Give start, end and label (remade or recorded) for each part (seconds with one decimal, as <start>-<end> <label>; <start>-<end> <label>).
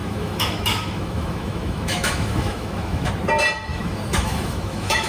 0.0-3.1 remade; 3.1-3.7 recorded; 3.7-5.1 remade